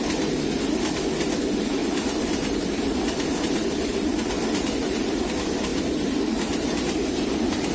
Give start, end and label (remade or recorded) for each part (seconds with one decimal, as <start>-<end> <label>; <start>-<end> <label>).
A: 0.0-1.8 recorded; 1.8-5.3 remade; 5.3-5.7 recorded; 5.7-7.7 remade